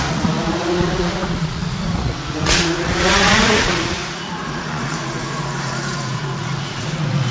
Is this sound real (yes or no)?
no